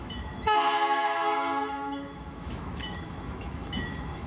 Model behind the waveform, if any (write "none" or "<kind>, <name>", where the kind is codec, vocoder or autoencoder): autoencoder, DAC-VAE